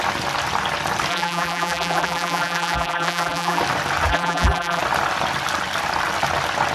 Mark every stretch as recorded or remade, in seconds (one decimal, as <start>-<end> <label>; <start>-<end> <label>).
0.0-1.1 recorded; 1.1-3.6 remade; 3.6-4.1 recorded; 4.1-4.8 remade; 4.8-6.7 recorded